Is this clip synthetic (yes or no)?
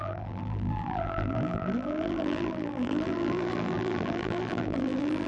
yes